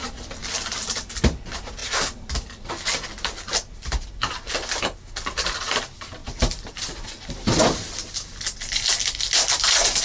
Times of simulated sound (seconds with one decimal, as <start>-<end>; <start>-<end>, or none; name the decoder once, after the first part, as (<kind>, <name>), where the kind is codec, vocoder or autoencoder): 0.4-1.4 (vocoder, BigVGAN v2); 6.2-7.1